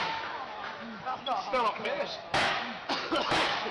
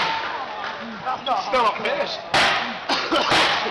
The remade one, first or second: first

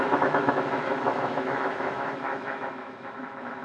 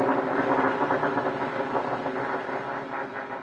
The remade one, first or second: first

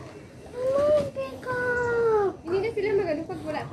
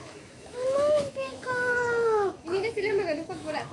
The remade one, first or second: second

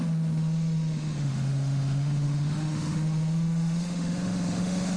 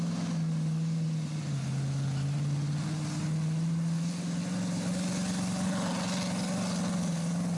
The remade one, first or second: first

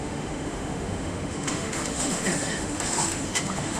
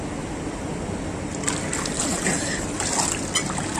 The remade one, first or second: first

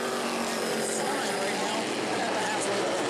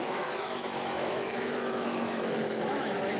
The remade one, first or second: second